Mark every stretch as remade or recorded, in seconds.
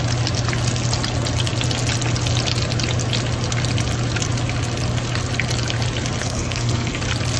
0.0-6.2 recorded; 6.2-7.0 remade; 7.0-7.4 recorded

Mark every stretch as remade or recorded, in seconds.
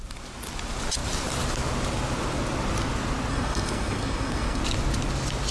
0.0-3.3 recorded; 3.3-4.6 remade; 4.6-5.5 recorded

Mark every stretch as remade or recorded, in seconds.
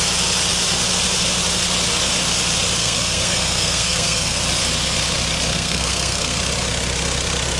0.0-2.8 recorded; 2.8-4.4 remade; 4.4-5.5 recorded; 5.5-6.4 remade; 6.4-7.6 recorded